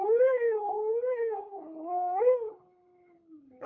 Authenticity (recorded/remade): remade